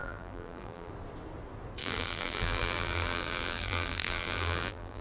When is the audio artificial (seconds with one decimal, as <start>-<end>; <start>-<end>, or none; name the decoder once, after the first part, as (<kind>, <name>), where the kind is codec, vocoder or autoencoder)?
0.0-0.9 (vocoder, BigVGAN v2); 1.8-5.0